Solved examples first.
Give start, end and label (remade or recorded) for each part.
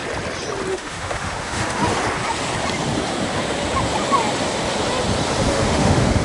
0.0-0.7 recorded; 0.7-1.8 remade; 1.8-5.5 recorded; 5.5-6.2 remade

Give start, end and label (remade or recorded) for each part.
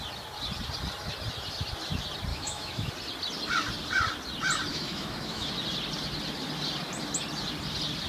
0.0-2.3 recorded; 2.3-2.9 remade; 2.9-4.7 recorded; 4.7-5.5 remade; 5.5-8.1 recorded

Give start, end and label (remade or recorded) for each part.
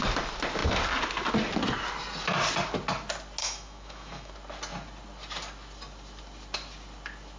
0.0-3.4 recorded; 3.4-4.3 remade; 4.3-7.4 recorded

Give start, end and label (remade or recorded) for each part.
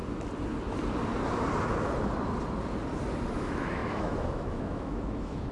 0.0-3.3 recorded; 3.3-5.5 remade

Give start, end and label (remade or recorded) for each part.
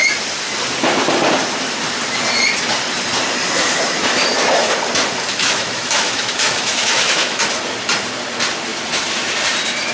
0.0-5.3 recorded; 5.3-7.4 remade; 7.4-9.9 recorded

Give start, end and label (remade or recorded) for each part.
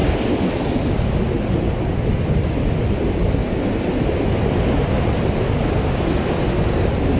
0.0-7.2 recorded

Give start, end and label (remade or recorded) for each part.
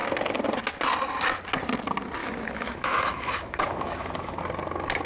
0.0-2.2 recorded; 2.2-4.4 remade; 4.4-5.1 recorded